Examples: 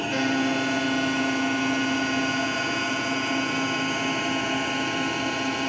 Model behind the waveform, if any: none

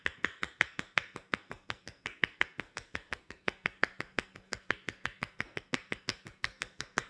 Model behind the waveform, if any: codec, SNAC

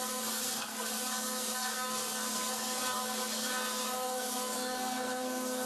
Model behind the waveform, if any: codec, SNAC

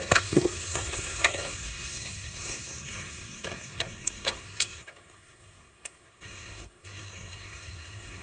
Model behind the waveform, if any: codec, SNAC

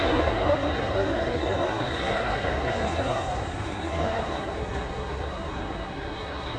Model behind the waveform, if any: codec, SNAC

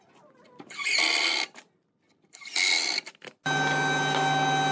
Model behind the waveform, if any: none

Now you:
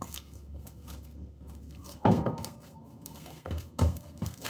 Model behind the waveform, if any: codec, SNAC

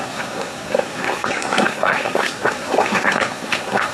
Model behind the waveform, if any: codec, SNAC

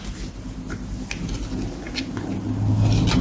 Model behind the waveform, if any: none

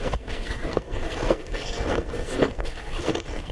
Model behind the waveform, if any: codec, SNAC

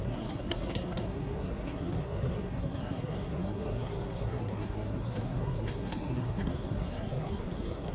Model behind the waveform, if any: codec, SNAC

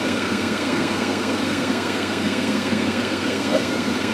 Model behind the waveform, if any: codec, SNAC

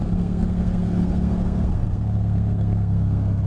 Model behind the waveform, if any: codec, SNAC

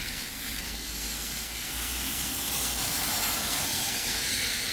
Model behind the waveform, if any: codec, SNAC